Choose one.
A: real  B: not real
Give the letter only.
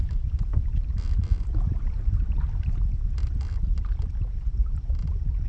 A